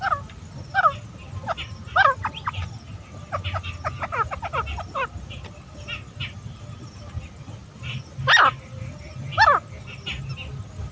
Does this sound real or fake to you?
real